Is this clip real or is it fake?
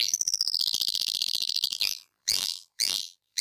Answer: fake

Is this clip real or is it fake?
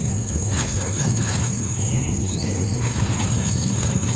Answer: fake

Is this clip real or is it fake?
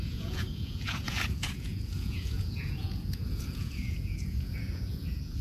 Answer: fake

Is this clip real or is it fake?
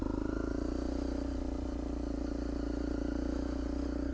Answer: real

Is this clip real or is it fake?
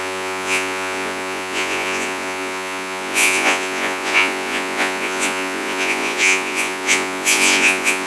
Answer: fake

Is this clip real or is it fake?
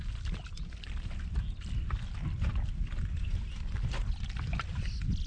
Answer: real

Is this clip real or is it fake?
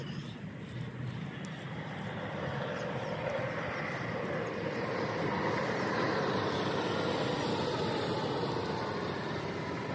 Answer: real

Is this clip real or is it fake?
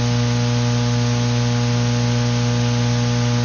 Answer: real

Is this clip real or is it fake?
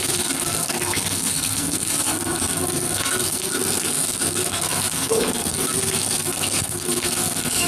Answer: fake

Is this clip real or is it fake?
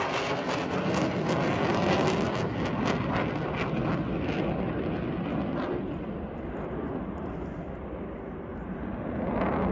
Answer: real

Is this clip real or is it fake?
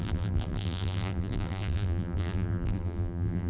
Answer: fake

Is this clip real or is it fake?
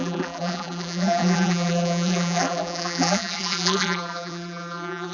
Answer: fake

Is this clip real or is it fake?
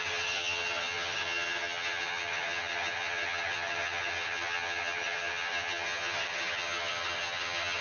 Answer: fake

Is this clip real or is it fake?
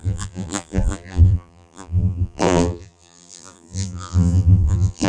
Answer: fake